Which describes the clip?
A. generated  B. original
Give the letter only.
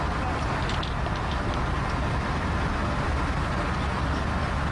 B